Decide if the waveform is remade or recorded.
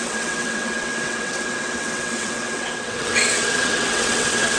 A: remade